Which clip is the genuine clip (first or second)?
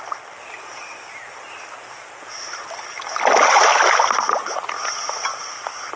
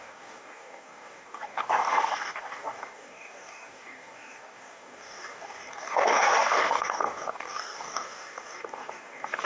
first